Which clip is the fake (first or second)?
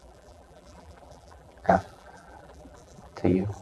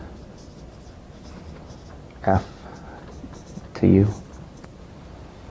first